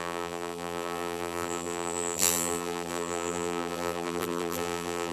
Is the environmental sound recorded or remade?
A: remade